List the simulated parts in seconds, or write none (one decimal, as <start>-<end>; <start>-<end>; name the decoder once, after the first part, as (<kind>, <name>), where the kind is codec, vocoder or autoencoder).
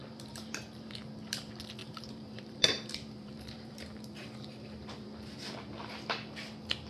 0.0-1.1 (vocoder, BigVGAN v2); 1.8-5.9